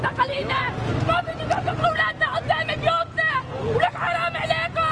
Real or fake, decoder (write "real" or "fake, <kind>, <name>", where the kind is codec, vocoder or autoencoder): real